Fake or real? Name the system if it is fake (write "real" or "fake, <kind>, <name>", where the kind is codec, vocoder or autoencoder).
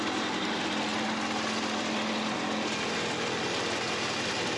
real